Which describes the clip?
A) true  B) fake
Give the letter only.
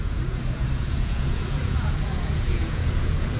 B